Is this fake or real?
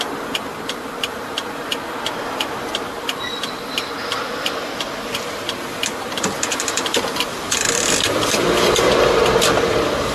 fake